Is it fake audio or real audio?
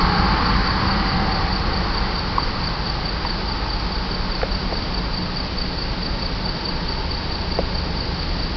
real